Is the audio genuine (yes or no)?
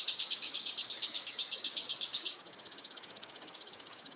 no